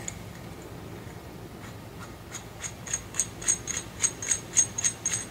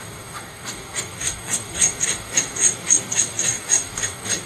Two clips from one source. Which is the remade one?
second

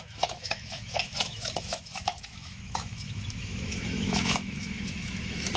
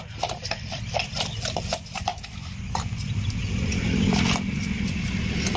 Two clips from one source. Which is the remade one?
first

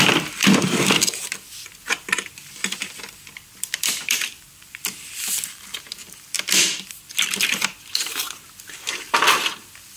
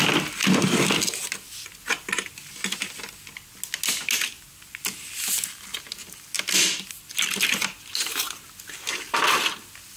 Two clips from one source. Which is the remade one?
first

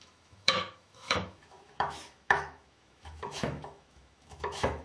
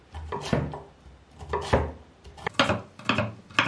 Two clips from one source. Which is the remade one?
first